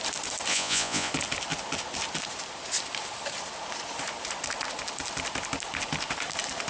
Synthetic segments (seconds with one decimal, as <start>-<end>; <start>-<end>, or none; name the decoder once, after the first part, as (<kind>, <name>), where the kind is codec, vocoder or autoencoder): 0.5-1.1 (vocoder, Vocos)